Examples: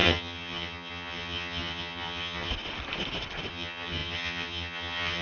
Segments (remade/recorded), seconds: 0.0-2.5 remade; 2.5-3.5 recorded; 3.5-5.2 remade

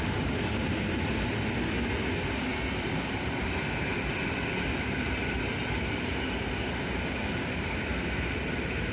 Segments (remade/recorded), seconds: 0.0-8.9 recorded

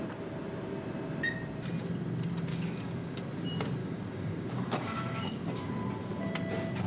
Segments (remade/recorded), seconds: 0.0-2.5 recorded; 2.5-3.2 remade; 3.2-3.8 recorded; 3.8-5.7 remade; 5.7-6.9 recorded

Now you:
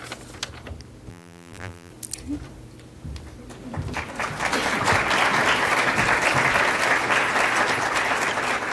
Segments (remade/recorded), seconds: 0.0-1.1 recorded; 1.1-1.9 remade; 1.9-8.7 recorded

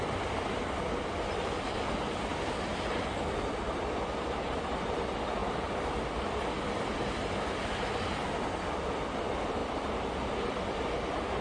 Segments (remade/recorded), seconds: 0.0-11.4 recorded